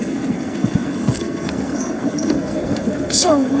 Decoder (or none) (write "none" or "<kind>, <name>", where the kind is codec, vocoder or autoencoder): codec, SNAC